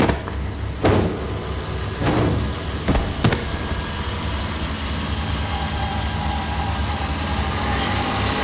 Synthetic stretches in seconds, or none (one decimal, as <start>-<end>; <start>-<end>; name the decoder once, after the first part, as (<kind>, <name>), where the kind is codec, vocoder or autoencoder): none